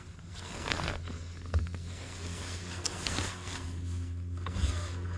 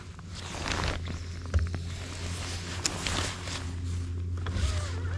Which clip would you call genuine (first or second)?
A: second